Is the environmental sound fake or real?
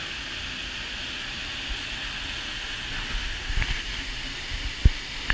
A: real